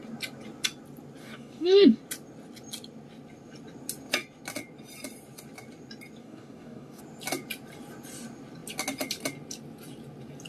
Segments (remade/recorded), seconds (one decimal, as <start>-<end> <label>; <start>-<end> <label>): 0.0-1.2 recorded; 1.2-2.0 remade; 2.0-6.2 recorded; 6.2-7.0 remade; 7.0-10.5 recorded